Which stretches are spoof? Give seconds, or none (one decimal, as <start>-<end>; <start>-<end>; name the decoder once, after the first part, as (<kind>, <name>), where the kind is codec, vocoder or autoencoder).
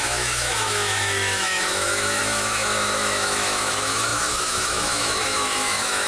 0.0-6.1 (autoencoder, DAC-VAE)